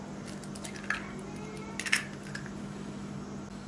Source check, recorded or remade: recorded